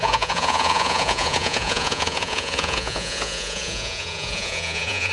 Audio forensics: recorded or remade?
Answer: remade